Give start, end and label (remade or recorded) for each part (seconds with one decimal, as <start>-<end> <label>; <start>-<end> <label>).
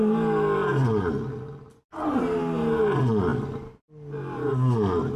0.0-5.2 recorded